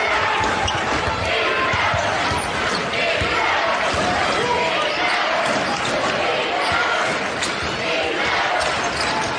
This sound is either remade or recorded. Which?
recorded